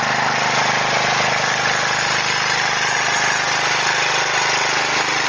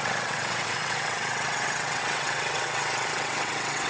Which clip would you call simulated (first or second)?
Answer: second